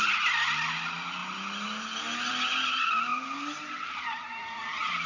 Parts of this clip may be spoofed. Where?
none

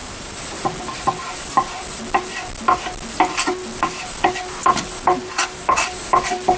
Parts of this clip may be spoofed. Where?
none

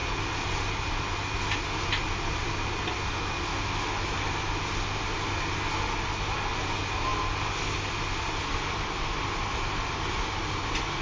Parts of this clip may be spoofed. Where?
3.5-4.6

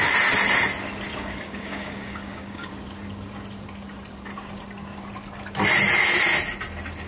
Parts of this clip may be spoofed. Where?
1.1-2.7

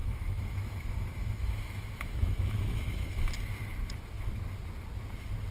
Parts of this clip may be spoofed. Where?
0.0-3.3

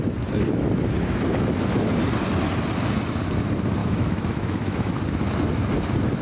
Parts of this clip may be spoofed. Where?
3.8-4.9

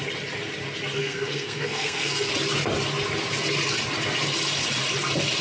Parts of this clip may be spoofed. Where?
1.0-2.3